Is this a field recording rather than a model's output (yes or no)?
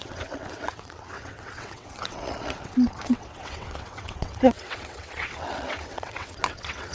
no